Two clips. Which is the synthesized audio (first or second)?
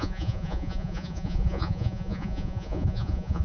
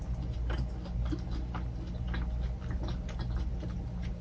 first